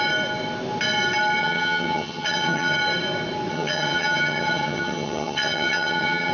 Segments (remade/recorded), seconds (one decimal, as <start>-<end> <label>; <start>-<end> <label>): 0.0-1.4 recorded; 1.4-2.8 remade; 2.8-3.5 recorded; 3.5-6.3 remade